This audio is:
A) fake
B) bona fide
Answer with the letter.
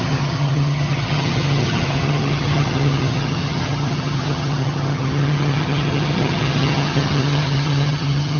A